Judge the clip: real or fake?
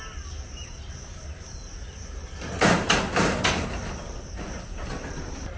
fake